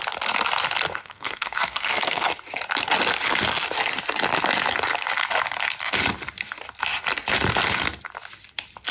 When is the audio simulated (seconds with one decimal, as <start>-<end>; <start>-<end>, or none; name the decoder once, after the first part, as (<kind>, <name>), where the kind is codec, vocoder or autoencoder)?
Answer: 0.9-2.3 (codec, SNAC)